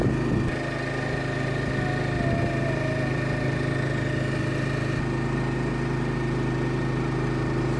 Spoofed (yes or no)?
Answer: no